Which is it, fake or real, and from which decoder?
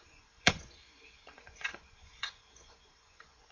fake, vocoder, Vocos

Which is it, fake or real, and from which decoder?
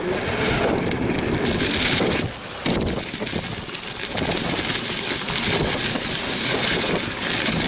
real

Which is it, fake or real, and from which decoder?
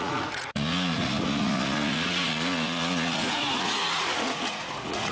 fake, vocoder, Vocos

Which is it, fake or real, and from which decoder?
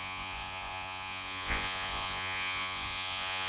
fake, vocoder, Vocos